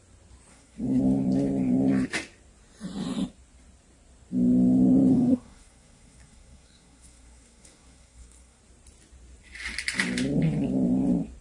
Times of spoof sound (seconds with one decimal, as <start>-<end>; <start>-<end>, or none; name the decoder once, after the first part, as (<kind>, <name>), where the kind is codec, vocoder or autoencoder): 0.5-1.0 (codec, SNAC); 5.1-8.6